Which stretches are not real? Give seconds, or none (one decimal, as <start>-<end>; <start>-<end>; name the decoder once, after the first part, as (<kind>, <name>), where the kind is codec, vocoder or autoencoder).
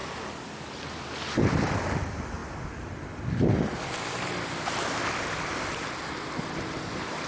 none